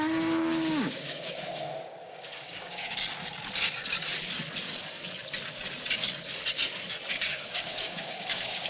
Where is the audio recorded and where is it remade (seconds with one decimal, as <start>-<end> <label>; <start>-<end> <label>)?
0.0-3.0 remade; 3.0-7.1 recorded; 7.1-8.7 remade

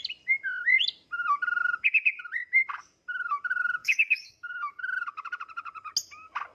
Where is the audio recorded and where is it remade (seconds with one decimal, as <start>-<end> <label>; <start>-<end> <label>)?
0.0-3.8 recorded; 3.8-4.8 remade; 4.8-6.5 recorded

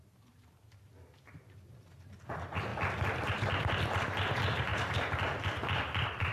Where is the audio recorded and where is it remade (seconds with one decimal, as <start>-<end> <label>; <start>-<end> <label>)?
0.0-6.3 recorded

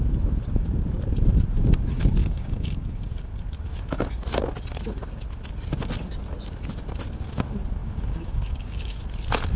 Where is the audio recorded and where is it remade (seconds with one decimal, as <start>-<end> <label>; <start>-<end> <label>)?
0.0-2.2 recorded; 2.2-3.3 remade; 3.3-7.8 recorded; 7.8-9.0 remade; 9.0-9.6 recorded

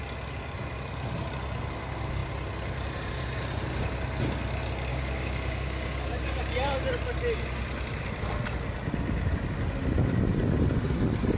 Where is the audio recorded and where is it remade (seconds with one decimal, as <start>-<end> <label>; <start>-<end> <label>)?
0.0-4.9 recorded; 4.9-6.4 remade; 6.4-11.4 recorded